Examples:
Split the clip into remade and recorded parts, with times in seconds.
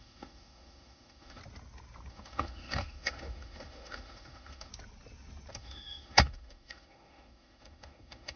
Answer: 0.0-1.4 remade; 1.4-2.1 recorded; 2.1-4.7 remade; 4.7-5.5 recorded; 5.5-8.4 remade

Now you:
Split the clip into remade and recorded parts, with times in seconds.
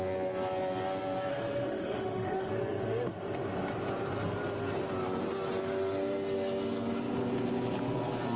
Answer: 0.0-1.3 recorded; 1.3-2.5 remade; 2.5-8.4 recorded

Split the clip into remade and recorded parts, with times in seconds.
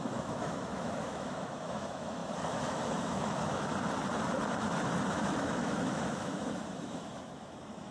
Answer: 0.0-3.7 remade; 3.7-5.1 recorded; 5.1-7.9 remade